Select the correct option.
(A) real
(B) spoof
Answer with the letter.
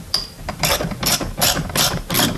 A